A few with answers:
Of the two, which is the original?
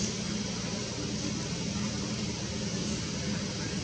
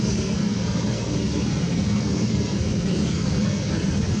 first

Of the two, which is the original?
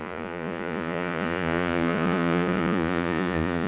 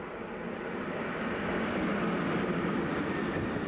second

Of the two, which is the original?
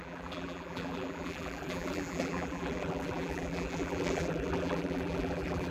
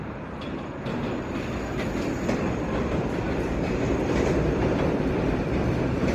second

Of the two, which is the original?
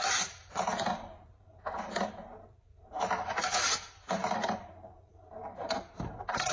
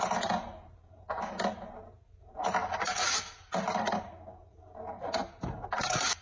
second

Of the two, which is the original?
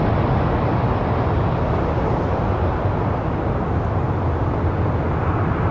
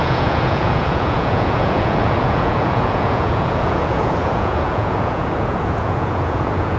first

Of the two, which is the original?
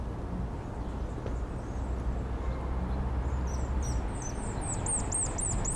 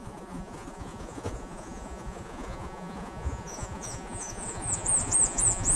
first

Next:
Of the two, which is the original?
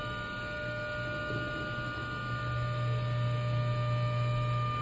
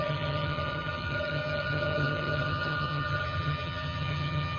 first